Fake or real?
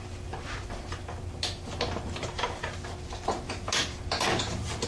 real